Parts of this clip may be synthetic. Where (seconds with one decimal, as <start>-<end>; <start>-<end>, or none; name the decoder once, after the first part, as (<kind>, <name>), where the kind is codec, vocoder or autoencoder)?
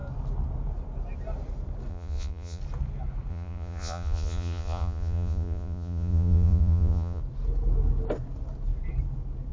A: 1.9-2.6 (vocoder, Vocos); 3.3-7.2